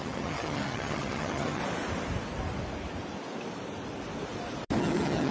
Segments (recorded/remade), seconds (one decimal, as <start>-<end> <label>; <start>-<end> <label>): 0.0-1.6 remade; 1.6-4.8 recorded; 4.8-5.3 remade